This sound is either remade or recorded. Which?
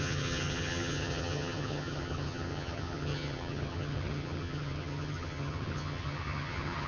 remade